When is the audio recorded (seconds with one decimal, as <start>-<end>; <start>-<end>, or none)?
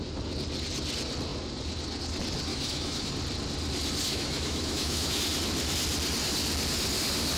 0.0-2.5; 3.1-4.1; 5.2-7.4